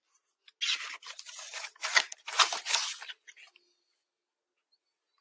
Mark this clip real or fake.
real